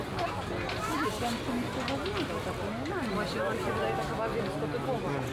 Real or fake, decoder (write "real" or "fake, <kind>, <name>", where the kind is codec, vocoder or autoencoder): real